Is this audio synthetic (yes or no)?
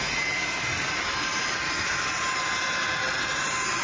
no